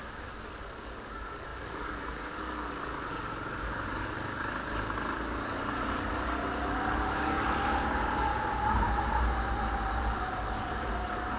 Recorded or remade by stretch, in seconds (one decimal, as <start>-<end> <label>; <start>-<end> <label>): 0.0-8.3 remade; 8.3-10.0 recorded; 10.0-11.4 remade